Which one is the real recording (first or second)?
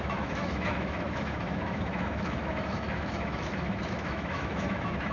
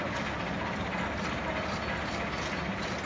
second